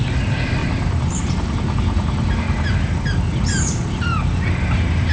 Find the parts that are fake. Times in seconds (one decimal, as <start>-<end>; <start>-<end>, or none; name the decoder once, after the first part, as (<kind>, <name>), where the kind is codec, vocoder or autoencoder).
0.6-1.2 (vocoder, BigVGAN v2)